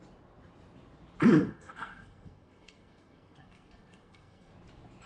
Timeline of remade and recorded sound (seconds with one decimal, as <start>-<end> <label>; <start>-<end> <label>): 0.0-1.4 recorded; 1.4-4.5 remade; 4.5-5.1 recorded